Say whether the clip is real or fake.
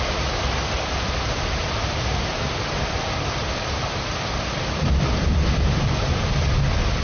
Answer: fake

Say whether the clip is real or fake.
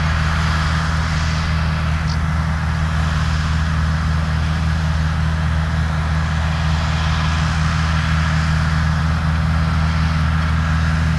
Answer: real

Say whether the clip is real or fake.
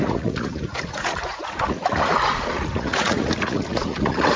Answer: fake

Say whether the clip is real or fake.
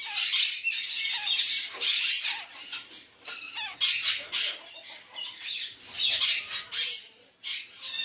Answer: real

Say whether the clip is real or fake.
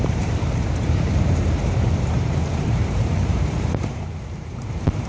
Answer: fake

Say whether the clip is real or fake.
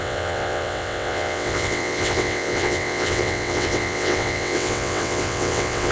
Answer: fake